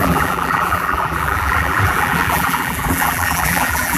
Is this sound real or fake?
fake